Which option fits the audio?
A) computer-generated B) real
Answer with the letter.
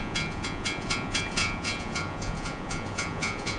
A